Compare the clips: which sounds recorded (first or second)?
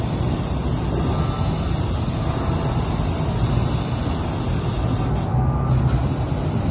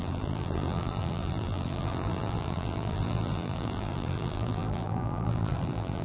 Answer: first